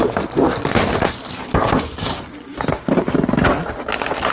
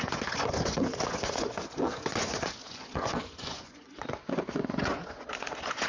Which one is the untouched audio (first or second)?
first